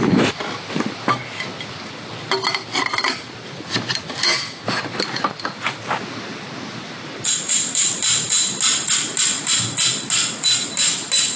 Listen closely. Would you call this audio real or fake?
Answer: real